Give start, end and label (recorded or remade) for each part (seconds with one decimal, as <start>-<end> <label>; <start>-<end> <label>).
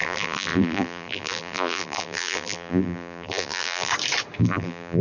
0.0-3.9 remade; 3.9-4.4 recorded; 4.4-5.0 remade